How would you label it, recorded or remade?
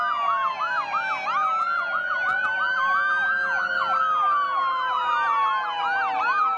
recorded